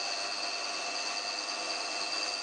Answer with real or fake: real